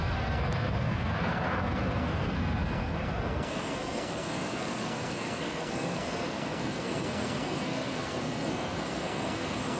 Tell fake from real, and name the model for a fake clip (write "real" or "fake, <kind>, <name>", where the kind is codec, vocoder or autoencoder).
fake, codec, SNAC